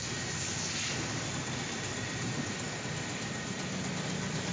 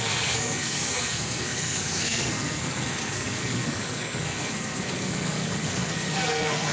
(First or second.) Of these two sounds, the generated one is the second